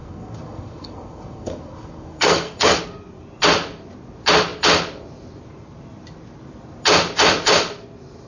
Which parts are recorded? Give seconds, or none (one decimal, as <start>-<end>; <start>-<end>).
2.8-8.3

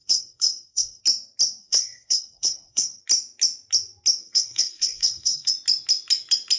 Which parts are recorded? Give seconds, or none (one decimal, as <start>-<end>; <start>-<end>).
1.0-1.6; 3.0-4.2; 5.5-6.6

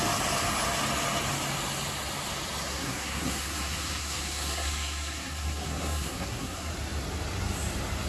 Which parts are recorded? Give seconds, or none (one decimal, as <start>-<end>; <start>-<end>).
0.0-2.7; 6.7-8.1

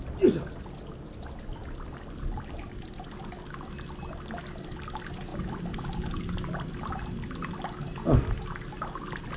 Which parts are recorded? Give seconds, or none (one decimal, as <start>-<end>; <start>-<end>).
0.0-9.4

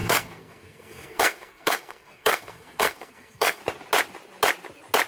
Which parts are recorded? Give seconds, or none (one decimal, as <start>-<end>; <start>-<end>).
3.6-5.1

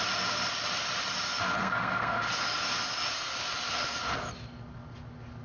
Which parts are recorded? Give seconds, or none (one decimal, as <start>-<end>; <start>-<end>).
0.0-1.6; 2.3-5.4